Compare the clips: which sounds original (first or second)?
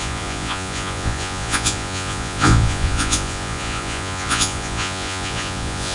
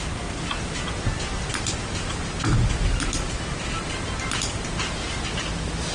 second